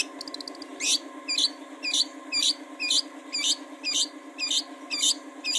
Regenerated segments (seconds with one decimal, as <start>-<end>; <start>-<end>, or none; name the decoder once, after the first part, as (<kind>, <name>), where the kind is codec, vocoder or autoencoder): none